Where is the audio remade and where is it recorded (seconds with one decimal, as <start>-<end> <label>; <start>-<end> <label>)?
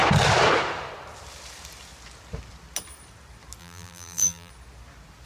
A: 0.0-3.6 recorded; 3.6-4.5 remade; 4.5-5.3 recorded